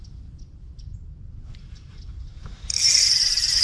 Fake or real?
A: fake